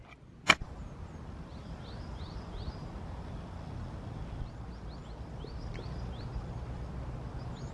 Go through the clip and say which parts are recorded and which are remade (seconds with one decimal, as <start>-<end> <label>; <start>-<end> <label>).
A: 0.0-7.7 recorded